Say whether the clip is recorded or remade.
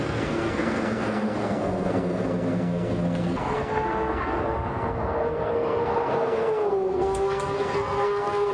remade